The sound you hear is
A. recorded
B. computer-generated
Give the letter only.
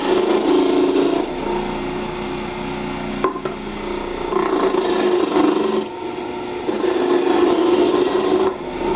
A